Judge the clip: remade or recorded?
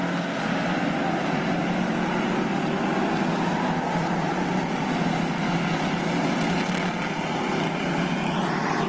recorded